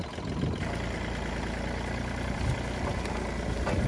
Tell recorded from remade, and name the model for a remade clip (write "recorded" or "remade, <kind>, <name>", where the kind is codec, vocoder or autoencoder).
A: recorded